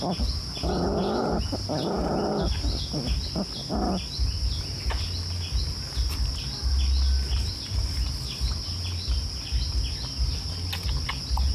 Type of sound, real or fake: real